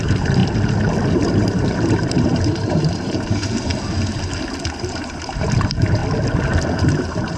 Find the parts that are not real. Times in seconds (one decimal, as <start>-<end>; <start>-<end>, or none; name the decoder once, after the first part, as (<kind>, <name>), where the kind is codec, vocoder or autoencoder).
0.0-0.4 (vocoder, BigVGAN v2); 1.1-3.7; 4.8-6.0; 6.7-7.4